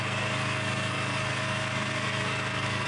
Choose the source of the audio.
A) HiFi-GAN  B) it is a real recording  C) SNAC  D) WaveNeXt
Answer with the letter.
C